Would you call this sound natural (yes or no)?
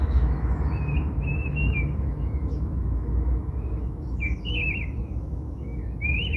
no